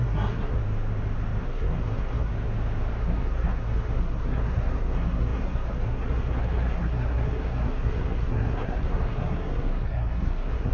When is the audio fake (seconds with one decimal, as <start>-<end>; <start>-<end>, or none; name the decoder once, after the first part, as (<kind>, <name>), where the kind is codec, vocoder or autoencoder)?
0.0-0.6 (codec, SNAC); 1.4-2.3; 3.0-10.7